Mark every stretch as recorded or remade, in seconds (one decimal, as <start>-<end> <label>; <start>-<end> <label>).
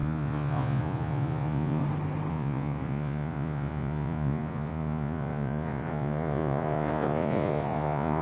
0.0-1.8 remade; 1.8-2.3 recorded; 2.3-8.2 remade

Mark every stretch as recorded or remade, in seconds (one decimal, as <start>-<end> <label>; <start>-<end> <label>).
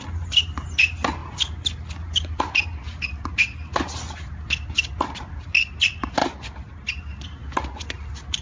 0.0-8.4 recorded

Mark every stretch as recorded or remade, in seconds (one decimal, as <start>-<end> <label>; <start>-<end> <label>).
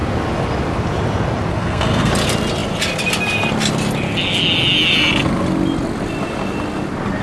0.0-1.5 recorded; 1.5-2.1 remade; 2.1-7.2 recorded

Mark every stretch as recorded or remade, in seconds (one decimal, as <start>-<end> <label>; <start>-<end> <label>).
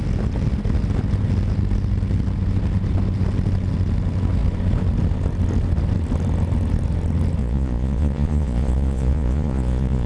0.0-7.4 recorded; 7.4-10.1 remade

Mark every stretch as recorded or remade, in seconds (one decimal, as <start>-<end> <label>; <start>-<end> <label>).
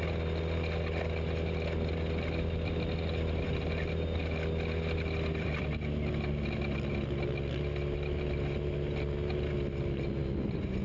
0.0-10.8 recorded